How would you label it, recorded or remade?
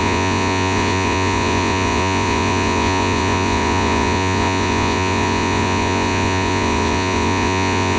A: remade